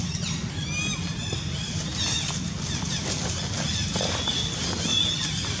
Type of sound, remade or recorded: recorded